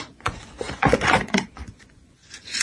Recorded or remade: remade